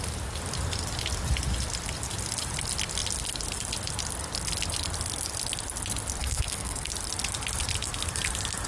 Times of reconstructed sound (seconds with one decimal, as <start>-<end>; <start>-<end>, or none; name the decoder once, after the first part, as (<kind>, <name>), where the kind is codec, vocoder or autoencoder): 6.2-6.9 (codec, SNAC)